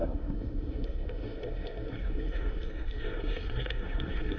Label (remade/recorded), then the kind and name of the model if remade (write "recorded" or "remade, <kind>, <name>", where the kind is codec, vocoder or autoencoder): remade, codec, SNAC